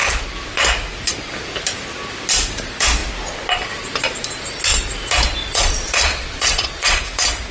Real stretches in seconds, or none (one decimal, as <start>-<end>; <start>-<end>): 0.0-5.4; 7.0-7.5